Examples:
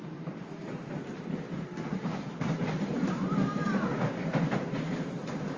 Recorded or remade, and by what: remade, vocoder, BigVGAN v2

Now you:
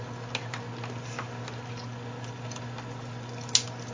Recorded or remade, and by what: recorded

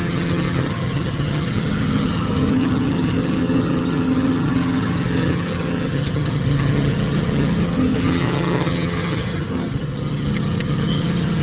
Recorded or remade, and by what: remade, vocoder, HiFi-GAN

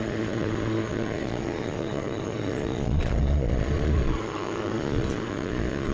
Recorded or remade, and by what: remade, vocoder, Vocos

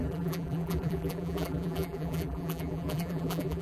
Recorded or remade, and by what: remade, vocoder, BigVGAN v2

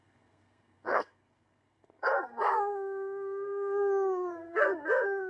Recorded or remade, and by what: remade, codec, SNAC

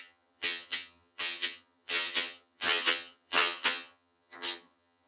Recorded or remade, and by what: remade, vocoder, HiFi-GAN